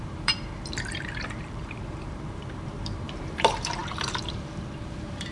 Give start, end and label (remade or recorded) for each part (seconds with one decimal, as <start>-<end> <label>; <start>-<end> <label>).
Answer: 0.0-5.3 remade